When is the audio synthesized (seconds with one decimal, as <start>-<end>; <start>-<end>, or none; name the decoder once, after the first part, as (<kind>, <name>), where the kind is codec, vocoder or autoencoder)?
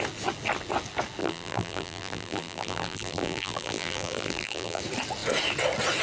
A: 1.2-4.8 (vocoder, BigVGAN v2)